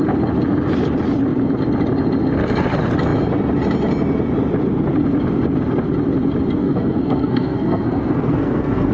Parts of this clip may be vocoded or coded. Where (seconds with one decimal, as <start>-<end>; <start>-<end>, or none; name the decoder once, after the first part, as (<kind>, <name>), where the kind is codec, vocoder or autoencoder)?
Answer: 6.6-8.9 (codec, SNAC)